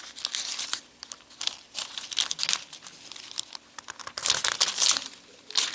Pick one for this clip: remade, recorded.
recorded